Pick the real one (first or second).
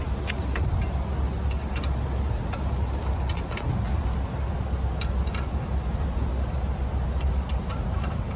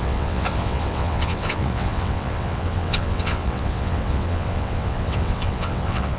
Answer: first